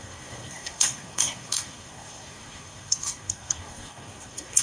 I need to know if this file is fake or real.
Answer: fake